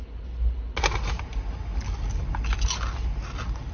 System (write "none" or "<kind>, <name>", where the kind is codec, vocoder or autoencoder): none